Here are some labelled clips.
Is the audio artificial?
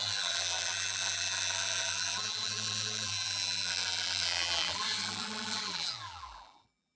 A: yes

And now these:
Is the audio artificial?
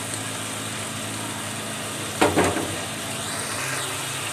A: no